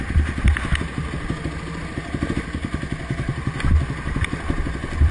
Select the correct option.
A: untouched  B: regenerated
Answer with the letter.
A